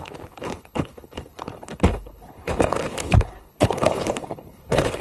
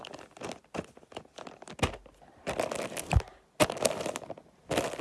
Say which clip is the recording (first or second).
second